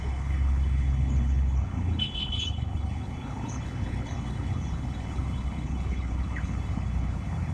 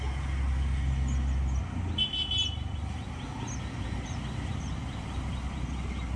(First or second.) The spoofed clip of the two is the first